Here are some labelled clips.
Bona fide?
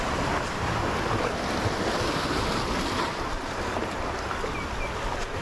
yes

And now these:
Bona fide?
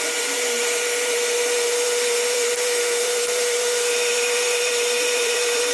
no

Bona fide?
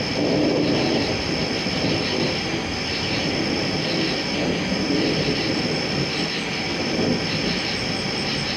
yes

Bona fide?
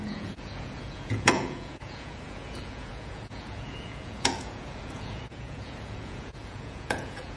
no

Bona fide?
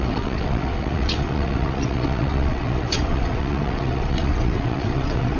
no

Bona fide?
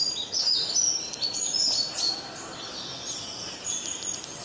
yes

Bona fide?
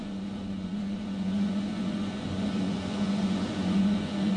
no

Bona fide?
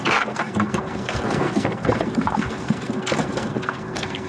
no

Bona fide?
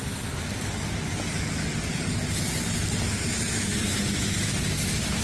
yes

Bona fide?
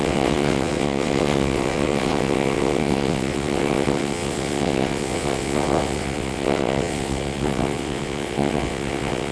no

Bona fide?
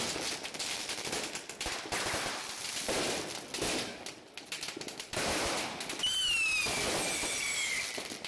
yes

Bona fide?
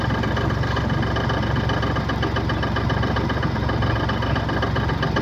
yes